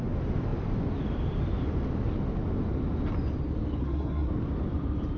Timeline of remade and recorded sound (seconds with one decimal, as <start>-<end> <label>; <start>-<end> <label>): 0.0-3.8 recorded; 3.8-4.3 remade; 4.3-5.2 recorded